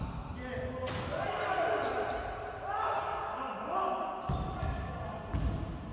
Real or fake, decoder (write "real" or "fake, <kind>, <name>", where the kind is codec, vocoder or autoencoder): real